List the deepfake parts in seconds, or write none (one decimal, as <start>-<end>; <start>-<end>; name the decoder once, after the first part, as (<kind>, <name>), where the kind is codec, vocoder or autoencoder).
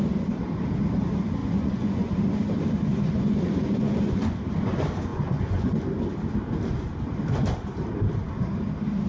1.4-2.1 (vocoder, Vocos); 2.9-4.4; 5.1-5.7